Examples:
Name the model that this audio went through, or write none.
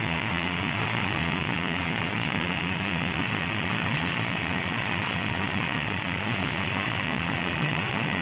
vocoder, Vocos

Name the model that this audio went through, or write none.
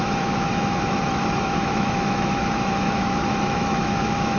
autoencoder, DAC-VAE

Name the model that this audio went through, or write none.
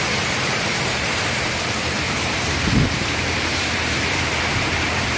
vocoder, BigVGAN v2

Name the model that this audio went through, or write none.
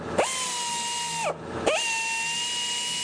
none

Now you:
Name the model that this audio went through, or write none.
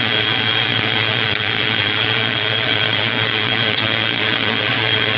vocoder, Vocos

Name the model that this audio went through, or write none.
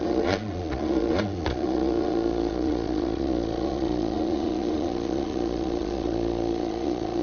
vocoder, Vocos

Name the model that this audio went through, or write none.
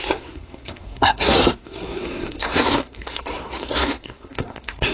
codec, SNAC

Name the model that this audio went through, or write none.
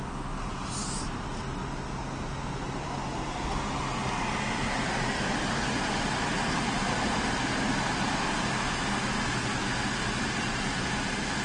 none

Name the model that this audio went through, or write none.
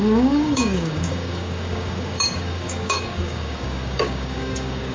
codec, DAC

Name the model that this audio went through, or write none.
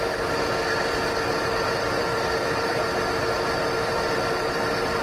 vocoder, BigVGAN v2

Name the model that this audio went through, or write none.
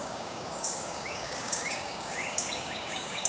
codec, DAC